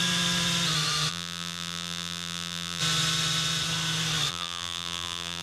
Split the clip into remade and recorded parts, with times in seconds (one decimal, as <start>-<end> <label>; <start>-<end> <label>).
0.0-1.1 recorded; 1.1-2.8 remade; 2.8-4.3 recorded; 4.3-5.4 remade